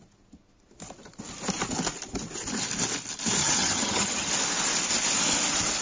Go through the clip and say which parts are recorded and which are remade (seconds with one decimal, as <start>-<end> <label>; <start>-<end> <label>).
0.0-3.4 recorded; 3.4-4.3 remade; 4.3-5.8 recorded